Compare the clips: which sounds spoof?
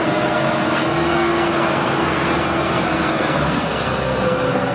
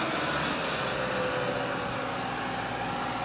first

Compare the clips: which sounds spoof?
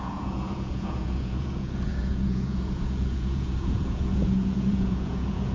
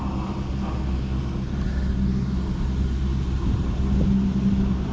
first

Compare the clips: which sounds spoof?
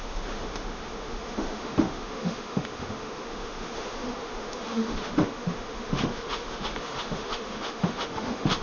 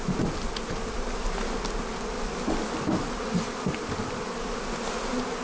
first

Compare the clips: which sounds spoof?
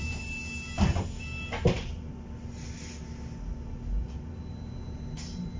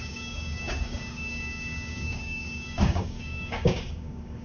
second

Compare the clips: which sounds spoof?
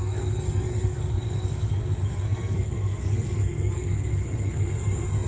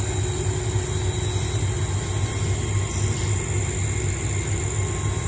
first